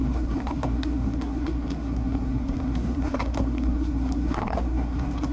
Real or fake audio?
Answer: fake